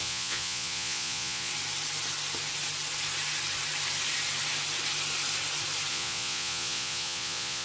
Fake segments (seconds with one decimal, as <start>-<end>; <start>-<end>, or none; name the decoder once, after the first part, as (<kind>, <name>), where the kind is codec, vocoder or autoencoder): 0.0-1.5 (vocoder, Vocos); 5.9-7.6